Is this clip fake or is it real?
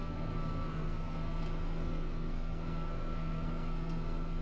fake